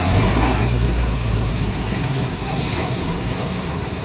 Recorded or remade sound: remade